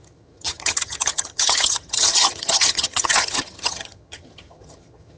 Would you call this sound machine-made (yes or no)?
yes